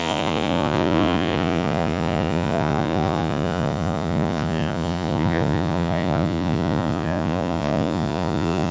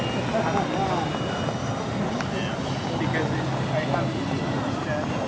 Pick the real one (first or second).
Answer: second